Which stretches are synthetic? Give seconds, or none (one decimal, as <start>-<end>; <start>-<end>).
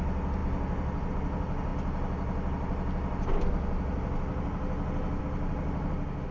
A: none